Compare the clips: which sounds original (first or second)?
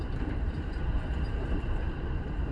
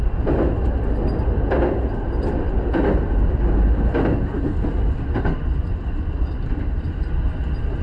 second